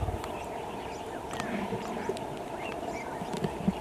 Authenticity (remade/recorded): recorded